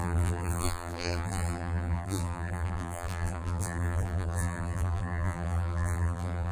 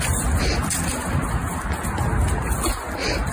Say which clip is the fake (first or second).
first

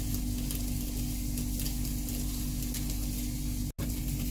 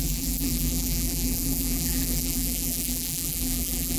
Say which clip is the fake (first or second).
second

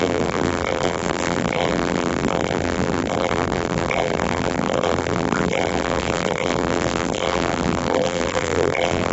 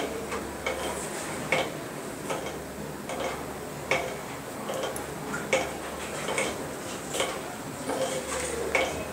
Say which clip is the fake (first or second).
first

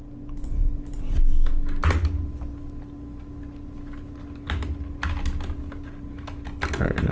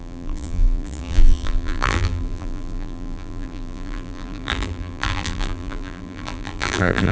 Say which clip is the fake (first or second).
second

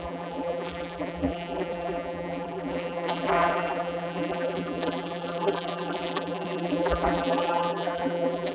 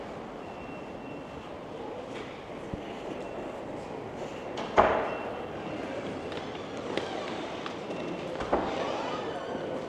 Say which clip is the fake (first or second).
first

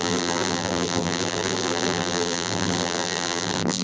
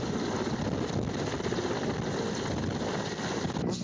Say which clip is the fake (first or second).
first